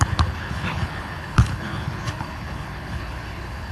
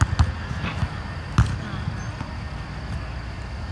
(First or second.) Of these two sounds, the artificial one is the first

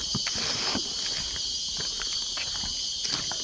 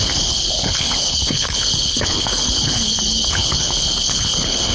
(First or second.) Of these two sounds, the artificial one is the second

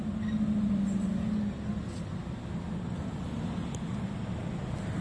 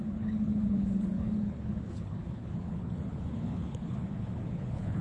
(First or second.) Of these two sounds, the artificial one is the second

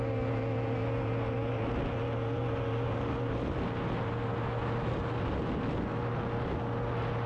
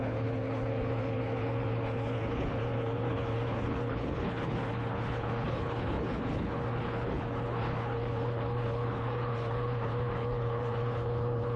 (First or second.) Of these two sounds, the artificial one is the second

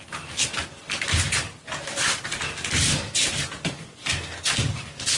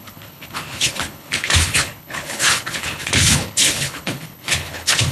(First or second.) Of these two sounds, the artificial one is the second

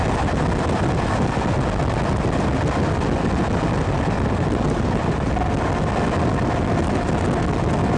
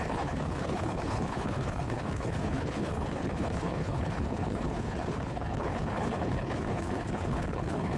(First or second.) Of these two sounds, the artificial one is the second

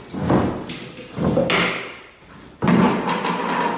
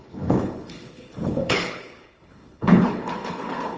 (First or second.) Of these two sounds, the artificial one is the second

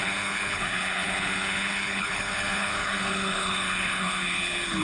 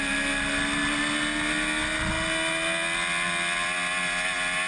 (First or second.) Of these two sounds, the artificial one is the first